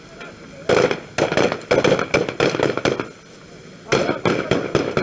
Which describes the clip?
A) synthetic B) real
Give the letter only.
B